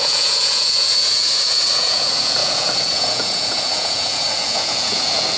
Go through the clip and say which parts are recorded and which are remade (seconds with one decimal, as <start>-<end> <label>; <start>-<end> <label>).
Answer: 0.0-5.4 remade